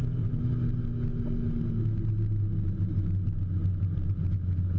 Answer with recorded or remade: recorded